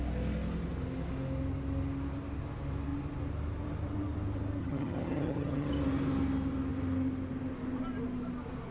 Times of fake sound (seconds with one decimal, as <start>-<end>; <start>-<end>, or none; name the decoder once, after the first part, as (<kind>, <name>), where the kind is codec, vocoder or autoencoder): 4.6-5.7 (vocoder, HiFi-GAN)